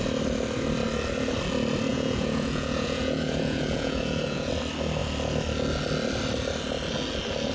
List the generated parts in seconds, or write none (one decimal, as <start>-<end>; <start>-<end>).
1.9-4.5